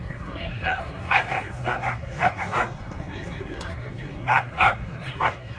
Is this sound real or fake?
fake